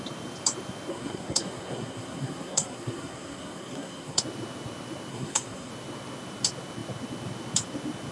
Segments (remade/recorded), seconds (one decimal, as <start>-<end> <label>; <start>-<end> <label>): 0.0-0.9 recorded; 0.9-4.2 remade; 4.2-5.1 recorded; 5.1-5.7 remade; 5.7-8.1 recorded